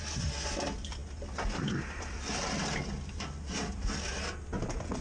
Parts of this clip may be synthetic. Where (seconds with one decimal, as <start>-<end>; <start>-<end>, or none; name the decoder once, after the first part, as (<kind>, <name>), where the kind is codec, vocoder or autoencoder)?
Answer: none